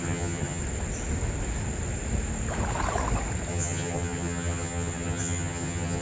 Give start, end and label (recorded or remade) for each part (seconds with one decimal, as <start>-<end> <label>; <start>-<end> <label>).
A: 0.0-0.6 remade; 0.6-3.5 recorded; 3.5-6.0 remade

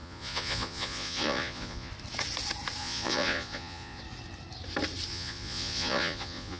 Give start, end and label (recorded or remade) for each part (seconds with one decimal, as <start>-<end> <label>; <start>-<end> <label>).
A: 0.0-1.9 remade; 1.9-2.8 recorded; 2.8-4.0 remade; 4.0-5.1 recorded; 5.1-6.6 remade

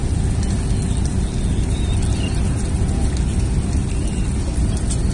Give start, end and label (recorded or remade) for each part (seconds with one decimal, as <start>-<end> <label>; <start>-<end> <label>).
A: 0.0-5.1 recorded

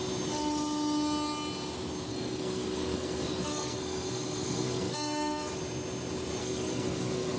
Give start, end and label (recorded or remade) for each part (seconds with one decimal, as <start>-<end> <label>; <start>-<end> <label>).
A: 0.0-2.1 recorded; 2.1-5.5 remade; 5.5-6.4 recorded; 6.4-7.4 remade

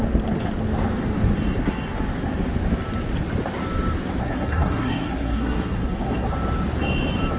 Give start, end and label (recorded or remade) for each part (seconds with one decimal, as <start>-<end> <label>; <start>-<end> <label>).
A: 0.0-4.2 recorded; 4.2-6.3 remade; 6.3-7.4 recorded

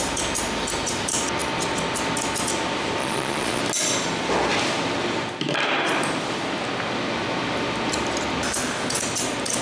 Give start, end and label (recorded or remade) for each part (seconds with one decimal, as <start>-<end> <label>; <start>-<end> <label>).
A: 0.0-3.0 recorded; 3.0-3.6 remade; 3.6-9.6 recorded